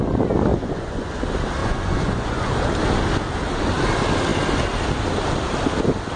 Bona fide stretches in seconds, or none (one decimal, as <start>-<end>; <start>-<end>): 0.0-0.5; 1.1-1.6; 2.5-6.2